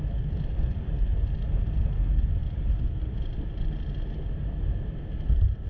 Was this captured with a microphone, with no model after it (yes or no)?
yes